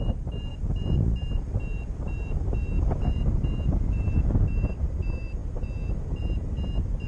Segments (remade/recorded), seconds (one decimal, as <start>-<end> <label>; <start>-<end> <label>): 0.0-7.1 recorded